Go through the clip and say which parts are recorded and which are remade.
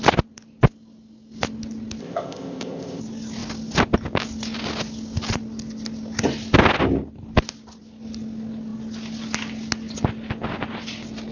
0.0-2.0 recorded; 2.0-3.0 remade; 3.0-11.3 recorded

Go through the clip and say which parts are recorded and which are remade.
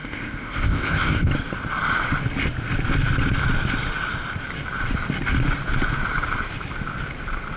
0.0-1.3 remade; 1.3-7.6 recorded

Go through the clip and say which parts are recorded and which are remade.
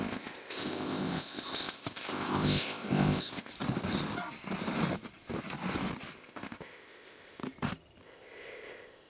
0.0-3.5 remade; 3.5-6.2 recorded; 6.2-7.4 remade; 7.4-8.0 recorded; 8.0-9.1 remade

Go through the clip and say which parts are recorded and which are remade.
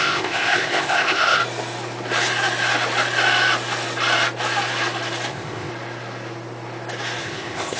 0.0-1.4 remade; 1.4-5.3 recorded; 5.3-5.7 remade; 5.7-7.2 recorded; 7.2-7.8 remade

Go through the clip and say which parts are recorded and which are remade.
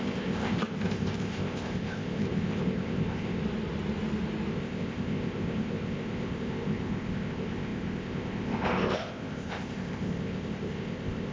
0.0-3.4 remade; 3.4-4.5 recorded; 4.5-11.3 remade